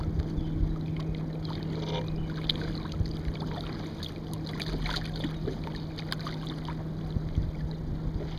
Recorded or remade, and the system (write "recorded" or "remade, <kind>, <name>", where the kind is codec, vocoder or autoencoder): recorded